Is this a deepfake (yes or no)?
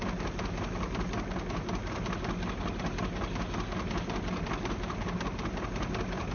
no